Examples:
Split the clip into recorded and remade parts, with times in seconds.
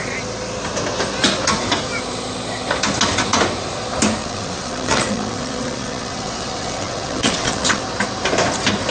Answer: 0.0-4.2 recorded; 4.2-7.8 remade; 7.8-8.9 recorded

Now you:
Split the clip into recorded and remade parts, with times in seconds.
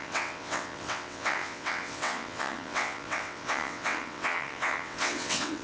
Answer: 0.0-5.6 remade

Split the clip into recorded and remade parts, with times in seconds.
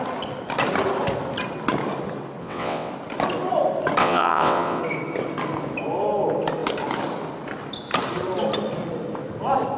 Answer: 0.0-2.4 recorded; 2.4-2.9 remade; 2.9-4.0 recorded; 4.0-4.8 remade; 4.8-9.8 recorded